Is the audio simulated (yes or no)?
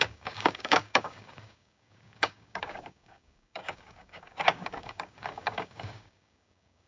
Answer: yes